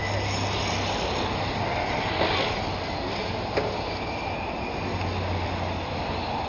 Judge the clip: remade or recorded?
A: recorded